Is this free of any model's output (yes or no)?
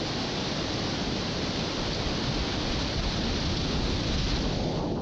yes